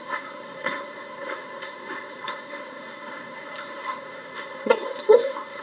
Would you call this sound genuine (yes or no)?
no